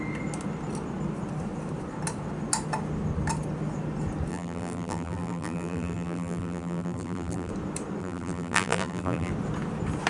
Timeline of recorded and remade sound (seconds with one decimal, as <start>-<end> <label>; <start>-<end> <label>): 0.0-4.3 recorded; 4.3-7.5 remade; 7.5-8.0 recorded; 8.0-9.3 remade; 9.3-10.1 recorded